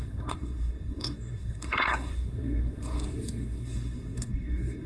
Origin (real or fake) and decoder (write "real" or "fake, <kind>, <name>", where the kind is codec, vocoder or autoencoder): fake, codec, SNAC